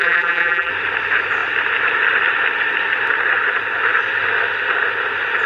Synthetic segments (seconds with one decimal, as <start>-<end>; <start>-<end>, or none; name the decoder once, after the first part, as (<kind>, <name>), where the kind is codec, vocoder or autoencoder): 0.0-0.7 (vocoder, BigVGAN v2)